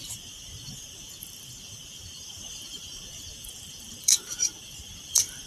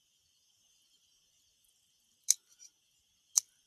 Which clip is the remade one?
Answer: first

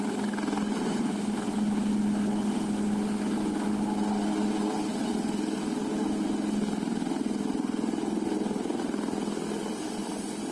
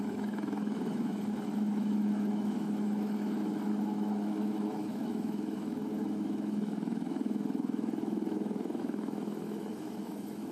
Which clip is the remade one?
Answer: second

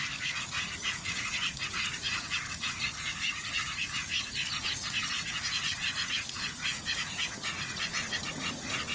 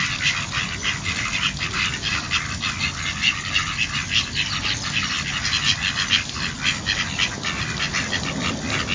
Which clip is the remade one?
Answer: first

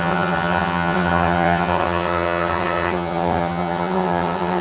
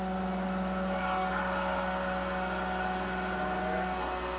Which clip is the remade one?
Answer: first